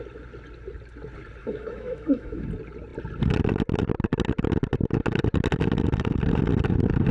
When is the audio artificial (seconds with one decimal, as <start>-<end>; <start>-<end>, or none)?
1.4-2.5